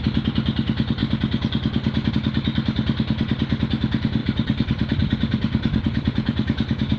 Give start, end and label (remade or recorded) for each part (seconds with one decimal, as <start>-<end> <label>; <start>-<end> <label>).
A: 0.0-4.2 recorded; 4.2-7.0 remade